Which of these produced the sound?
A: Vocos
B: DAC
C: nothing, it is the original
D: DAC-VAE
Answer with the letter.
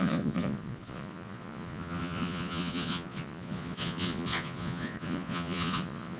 A